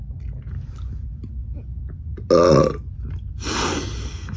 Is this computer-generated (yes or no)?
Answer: no